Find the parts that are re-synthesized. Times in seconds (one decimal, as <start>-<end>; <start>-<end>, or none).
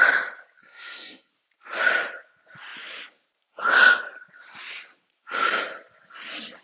0.6-1.3